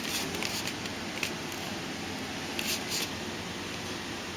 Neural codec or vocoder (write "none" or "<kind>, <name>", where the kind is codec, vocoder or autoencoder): none